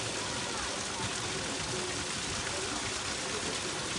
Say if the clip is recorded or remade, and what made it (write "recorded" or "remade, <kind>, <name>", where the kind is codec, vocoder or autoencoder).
recorded